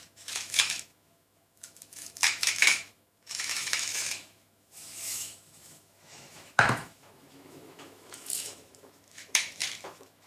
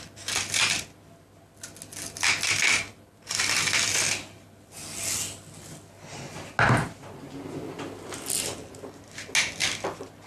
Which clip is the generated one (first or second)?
first